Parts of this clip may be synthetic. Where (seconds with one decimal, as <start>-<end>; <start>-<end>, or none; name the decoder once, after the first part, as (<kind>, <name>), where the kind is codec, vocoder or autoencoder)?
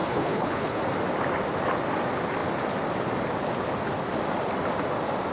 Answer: 0.0-0.8 (codec, HILCodec)